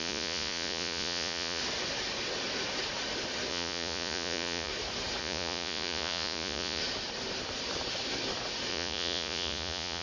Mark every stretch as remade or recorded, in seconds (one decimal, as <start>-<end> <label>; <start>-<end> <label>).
0.0-1.6 remade; 1.6-3.5 recorded; 3.5-4.7 remade; 4.7-5.2 recorded; 5.2-6.8 remade; 6.8-8.7 recorded; 8.7-10.0 remade